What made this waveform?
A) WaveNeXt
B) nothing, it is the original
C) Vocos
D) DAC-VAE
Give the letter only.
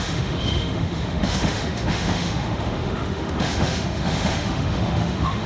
D